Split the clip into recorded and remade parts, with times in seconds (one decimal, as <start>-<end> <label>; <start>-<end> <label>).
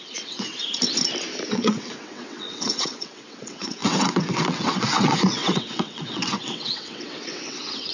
0.0-0.5 remade; 0.5-1.5 recorded; 1.5-7.9 remade